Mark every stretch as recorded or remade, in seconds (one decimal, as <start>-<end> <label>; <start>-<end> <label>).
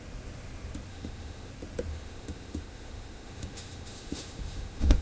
0.0-0.9 recorded; 0.9-1.5 remade; 1.5-1.9 recorded; 1.9-5.0 remade